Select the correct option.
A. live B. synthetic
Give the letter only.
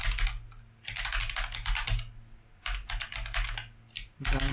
A